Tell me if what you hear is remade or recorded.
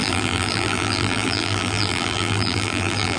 remade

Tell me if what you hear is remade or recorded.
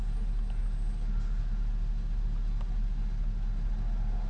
recorded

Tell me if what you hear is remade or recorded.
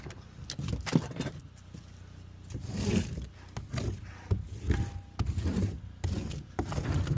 recorded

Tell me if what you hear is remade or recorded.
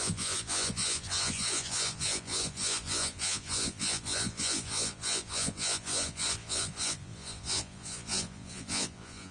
remade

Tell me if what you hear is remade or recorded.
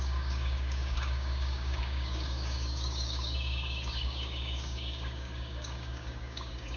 remade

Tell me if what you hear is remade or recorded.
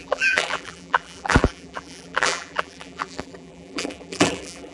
remade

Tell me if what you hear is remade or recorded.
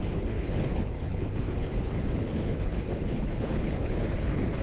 remade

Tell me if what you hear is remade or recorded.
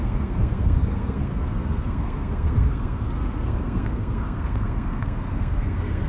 remade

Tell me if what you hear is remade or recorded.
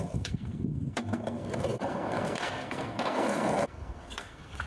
remade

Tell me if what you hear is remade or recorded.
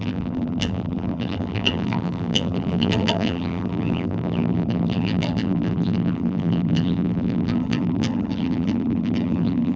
remade